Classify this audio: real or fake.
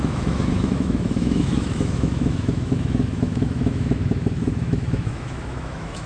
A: fake